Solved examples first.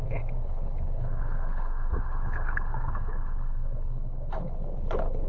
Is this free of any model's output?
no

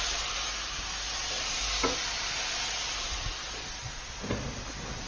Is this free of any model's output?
yes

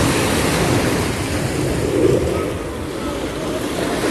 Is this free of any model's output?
yes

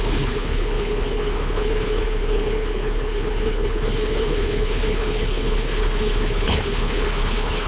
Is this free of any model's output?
no